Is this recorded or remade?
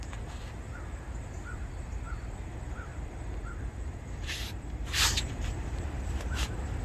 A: remade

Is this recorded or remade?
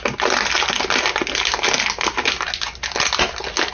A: recorded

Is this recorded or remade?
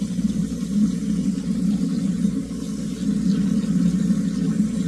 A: recorded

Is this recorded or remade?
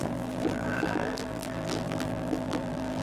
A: remade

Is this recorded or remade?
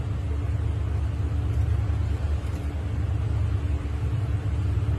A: recorded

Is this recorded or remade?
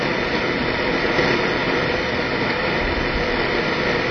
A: recorded